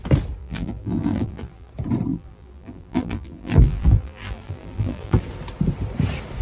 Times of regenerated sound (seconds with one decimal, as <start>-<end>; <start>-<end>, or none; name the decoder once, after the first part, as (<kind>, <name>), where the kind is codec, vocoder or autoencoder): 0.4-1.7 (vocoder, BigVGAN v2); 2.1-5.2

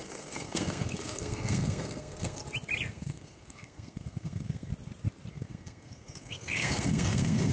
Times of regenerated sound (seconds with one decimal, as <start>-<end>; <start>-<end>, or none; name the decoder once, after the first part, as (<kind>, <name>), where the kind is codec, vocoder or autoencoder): 0.0-2.4 (codec, SNAC); 2.9-4.7; 5.3-7.5

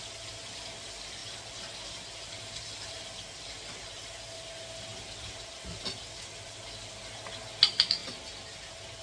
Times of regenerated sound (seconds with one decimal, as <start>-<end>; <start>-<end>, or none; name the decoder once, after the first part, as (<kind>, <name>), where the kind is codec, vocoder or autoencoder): none

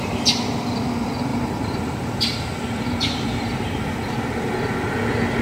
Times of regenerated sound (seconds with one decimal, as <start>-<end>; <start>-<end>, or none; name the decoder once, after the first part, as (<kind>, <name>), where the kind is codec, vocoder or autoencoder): 1.3-4.5 (vocoder, BigVGAN v2)

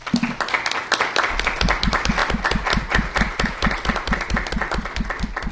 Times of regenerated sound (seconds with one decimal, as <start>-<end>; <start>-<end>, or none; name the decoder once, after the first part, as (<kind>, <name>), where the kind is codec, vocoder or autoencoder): none

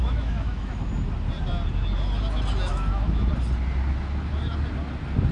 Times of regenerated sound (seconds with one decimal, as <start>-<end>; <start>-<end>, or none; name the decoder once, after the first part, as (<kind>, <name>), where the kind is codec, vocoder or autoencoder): 0.0-0.9 (autoencoder, DAC-VAE); 2.7-3.3

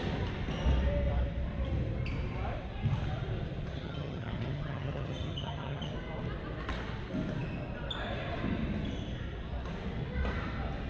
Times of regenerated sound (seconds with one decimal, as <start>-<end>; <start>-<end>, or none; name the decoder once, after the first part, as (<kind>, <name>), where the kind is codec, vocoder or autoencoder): 3.7-5.9 (vocoder, HiFi-GAN)

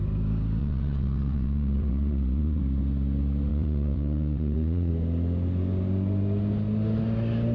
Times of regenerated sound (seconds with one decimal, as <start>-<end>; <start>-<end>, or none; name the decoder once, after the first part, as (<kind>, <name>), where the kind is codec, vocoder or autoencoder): 0.6-2.6 (vocoder, WaveNeXt); 3.5-4.9